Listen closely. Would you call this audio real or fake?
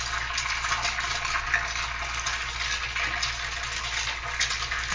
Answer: real